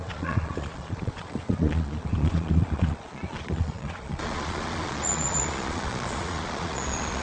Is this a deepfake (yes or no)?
yes